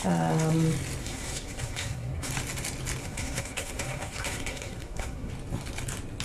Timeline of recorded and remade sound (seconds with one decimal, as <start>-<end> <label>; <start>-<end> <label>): 0.0-1.0 recorded; 1.0-2.3 remade; 2.3-3.0 recorded; 3.0-5.3 remade; 5.3-6.2 recorded